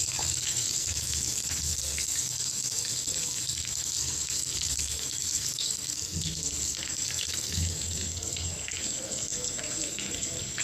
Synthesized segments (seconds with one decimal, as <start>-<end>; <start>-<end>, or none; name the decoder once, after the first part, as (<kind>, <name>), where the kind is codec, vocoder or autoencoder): 0.0-10.6 (codec, SNAC)